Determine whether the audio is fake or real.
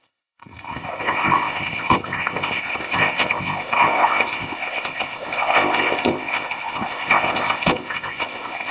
fake